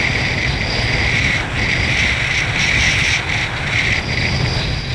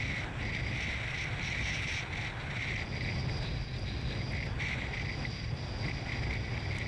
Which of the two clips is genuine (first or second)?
second